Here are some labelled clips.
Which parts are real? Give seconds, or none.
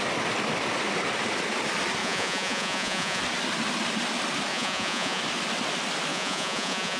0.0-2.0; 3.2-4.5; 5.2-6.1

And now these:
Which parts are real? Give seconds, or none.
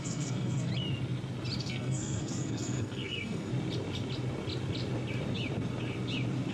0.7-1.6; 3.5-6.5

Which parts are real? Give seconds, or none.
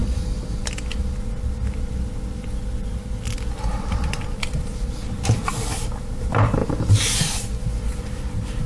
0.0-3.7; 6.6-8.0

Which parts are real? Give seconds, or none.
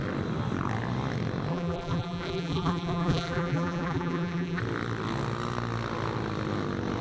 0.0-1.5; 4.6-7.0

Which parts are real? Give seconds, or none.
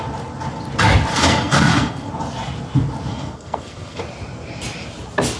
0.0-1.1; 2.1-3.1; 4.0-5.4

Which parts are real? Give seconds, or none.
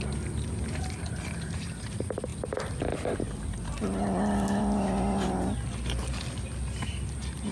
0.0-7.5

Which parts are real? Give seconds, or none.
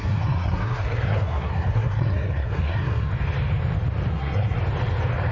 3.1-4.1; 4.6-5.3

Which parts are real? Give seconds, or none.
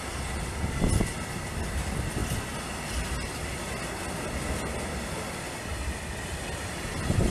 0.0-7.3